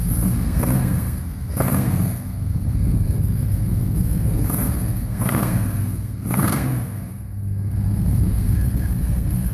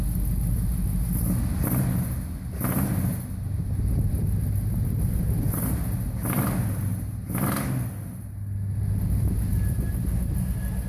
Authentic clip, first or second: second